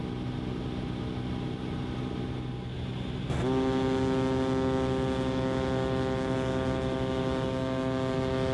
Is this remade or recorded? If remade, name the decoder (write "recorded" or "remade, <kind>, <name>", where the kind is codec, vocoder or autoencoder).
recorded